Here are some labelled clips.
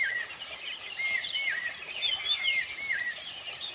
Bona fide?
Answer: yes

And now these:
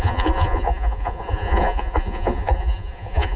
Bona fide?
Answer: no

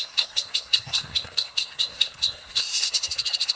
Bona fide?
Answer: no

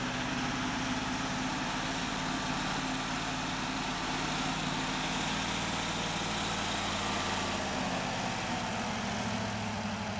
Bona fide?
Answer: yes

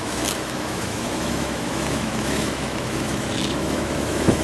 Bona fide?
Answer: no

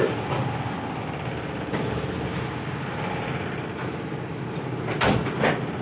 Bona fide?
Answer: no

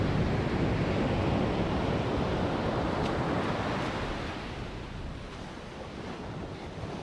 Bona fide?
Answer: yes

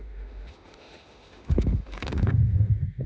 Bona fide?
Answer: no